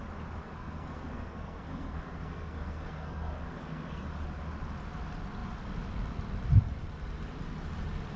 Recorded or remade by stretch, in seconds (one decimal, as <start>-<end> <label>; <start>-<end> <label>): 0.0-0.4 recorded; 0.4-4.1 remade; 4.1-8.2 recorded